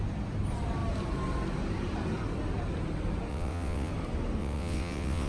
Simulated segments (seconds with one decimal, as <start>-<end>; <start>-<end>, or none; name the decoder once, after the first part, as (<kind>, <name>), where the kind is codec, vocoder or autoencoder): 3.3-3.9 (vocoder, WaveNeXt); 4.4-5.3